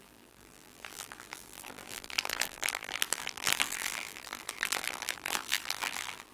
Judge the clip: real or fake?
fake